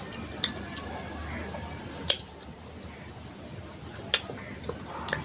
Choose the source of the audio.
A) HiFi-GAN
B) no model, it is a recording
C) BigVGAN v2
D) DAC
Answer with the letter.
B